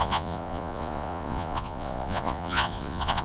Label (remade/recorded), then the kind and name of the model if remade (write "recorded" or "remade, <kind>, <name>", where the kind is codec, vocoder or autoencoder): remade, vocoder, Vocos